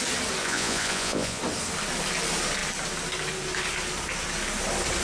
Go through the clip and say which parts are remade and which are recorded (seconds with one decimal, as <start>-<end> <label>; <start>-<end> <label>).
0.0-0.4 recorded; 0.4-1.4 remade; 1.4-5.0 recorded